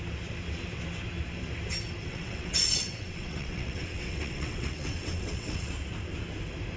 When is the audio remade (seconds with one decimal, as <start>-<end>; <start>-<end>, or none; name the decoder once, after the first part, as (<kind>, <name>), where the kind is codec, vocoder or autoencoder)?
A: 2.0-5.7 (vocoder, WaveNeXt)